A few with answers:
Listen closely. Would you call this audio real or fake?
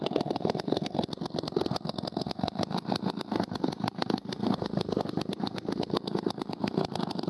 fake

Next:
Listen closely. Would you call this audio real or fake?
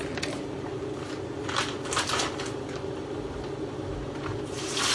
real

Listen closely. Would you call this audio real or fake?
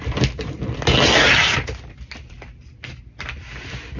real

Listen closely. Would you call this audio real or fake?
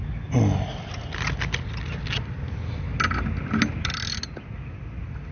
real